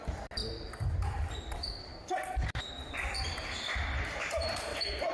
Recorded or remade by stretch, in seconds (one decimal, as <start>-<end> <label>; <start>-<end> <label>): 0.0-0.4 recorded; 0.4-1.3 remade; 1.3-1.9 recorded; 1.9-5.1 remade